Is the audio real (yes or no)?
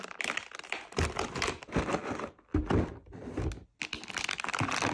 yes